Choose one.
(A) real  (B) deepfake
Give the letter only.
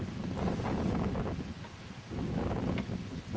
A